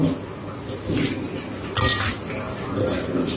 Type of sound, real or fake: real